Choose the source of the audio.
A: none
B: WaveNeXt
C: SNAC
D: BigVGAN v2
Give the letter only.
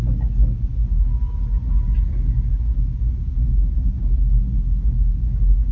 A